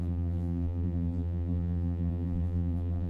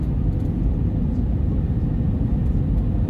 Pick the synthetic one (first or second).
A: first